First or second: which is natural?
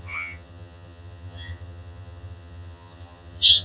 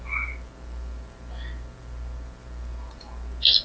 second